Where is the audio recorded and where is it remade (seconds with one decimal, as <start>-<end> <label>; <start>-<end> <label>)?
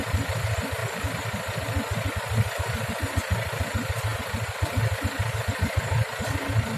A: 0.0-6.8 recorded